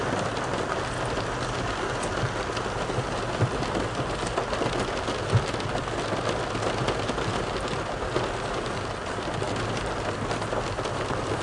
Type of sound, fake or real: real